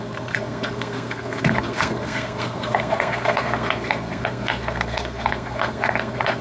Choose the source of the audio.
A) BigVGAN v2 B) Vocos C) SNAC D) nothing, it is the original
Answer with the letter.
C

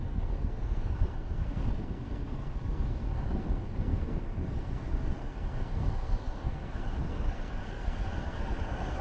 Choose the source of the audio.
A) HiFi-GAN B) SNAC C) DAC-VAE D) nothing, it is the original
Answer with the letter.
B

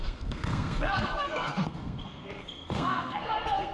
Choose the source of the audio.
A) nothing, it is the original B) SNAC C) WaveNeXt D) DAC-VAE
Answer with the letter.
B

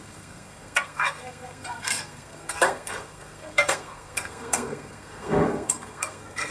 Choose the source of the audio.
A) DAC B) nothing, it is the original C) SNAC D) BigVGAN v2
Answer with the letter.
C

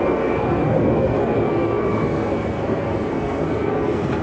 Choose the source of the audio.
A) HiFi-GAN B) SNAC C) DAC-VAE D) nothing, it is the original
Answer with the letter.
B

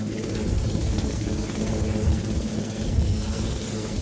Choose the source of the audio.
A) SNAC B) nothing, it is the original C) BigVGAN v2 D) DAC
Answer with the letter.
A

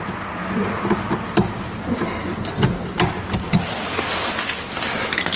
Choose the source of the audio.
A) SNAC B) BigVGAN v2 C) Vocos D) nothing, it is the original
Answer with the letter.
D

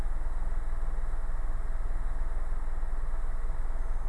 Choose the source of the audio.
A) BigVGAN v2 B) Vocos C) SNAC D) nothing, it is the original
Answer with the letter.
D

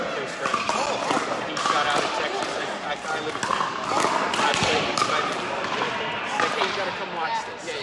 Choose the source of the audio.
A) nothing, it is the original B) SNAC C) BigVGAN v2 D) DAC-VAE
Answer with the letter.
A